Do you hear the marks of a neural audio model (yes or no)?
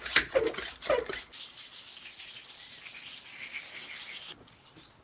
no